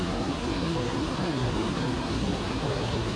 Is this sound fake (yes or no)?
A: yes